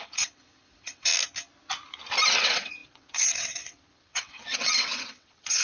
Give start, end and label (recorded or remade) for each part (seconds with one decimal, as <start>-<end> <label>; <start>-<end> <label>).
0.0-1.1 remade; 1.1-2.4 recorded; 2.4-5.6 remade